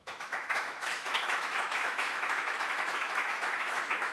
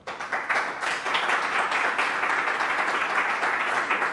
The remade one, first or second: first